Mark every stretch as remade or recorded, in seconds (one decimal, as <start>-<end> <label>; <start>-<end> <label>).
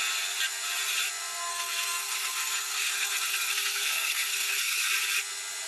0.0-1.5 recorded; 1.5-4.9 remade; 4.9-5.7 recorded